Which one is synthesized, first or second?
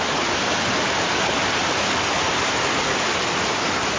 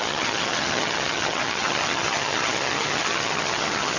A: second